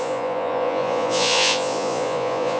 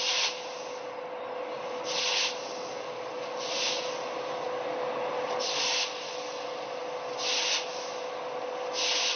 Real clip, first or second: second